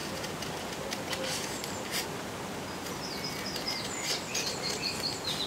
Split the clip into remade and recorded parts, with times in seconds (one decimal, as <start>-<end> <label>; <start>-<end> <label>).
0.0-5.5 recorded